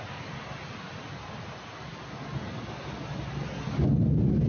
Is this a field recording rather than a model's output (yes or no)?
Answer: yes